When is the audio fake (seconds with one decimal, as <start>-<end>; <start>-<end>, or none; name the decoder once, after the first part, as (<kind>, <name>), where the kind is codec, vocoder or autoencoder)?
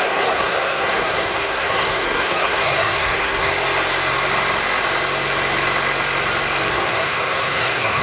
0.0-3.5 (codec, SNAC); 6.7-8.0